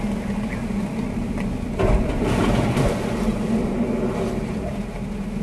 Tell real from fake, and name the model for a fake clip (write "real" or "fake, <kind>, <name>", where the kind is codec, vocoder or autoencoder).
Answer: real